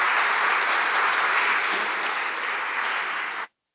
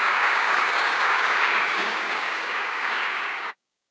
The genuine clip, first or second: first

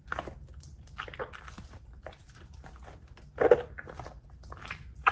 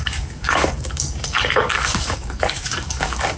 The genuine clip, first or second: first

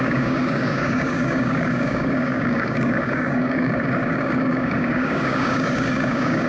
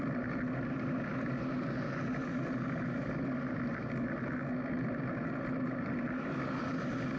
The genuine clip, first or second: second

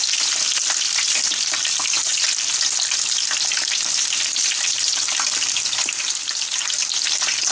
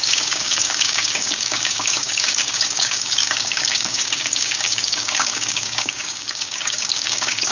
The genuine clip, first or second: first